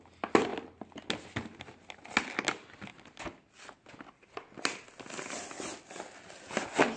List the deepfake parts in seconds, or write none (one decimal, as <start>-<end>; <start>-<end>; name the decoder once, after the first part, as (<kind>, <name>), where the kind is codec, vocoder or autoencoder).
none